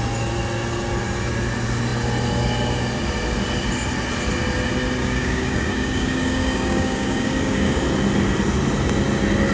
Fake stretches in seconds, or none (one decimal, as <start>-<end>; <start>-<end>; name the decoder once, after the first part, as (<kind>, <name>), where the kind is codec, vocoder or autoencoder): 5.0-7.8 (codec, DAC)